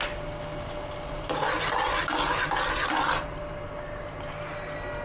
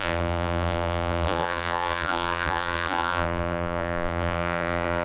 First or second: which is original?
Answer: first